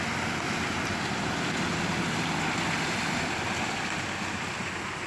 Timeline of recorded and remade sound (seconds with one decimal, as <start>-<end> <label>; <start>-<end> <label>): 0.0-3.1 recorded; 3.1-5.1 remade